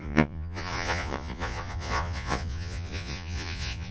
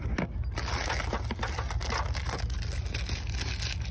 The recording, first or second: second